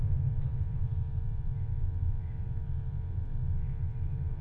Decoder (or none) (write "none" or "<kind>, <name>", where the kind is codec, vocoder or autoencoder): none